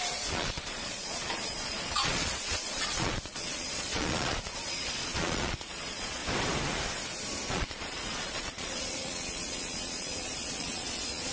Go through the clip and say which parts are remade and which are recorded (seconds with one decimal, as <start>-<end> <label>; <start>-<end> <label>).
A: 0.0-6.2 remade; 6.2-7.5 recorded; 7.5-11.3 remade